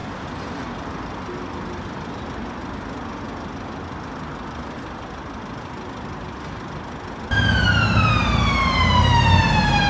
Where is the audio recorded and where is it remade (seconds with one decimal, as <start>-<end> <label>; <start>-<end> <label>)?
0.0-9.9 recorded